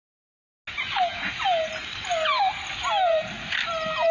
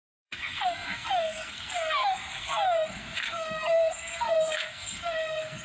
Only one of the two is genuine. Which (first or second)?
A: first